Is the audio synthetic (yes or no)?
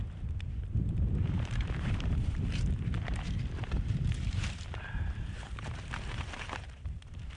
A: yes